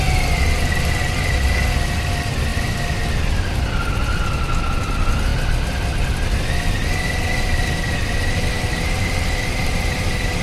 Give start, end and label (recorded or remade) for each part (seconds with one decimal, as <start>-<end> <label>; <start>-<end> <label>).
0.0-10.4 recorded